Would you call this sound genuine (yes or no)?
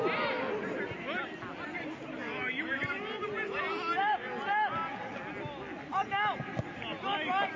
yes